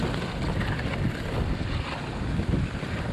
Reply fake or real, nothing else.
real